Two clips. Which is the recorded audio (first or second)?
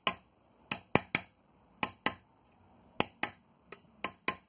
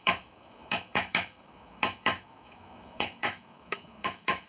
first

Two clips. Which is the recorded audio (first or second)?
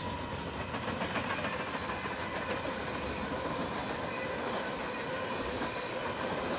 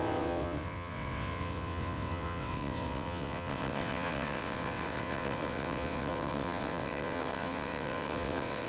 first